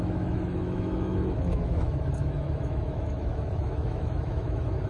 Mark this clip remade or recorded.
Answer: remade